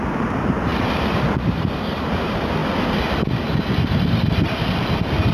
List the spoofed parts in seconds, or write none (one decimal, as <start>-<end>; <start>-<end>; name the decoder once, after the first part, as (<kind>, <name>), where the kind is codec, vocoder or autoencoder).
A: 0.0-2.6 (vocoder, BigVGAN v2)